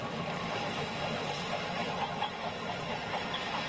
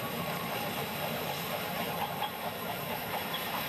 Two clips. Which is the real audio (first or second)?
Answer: first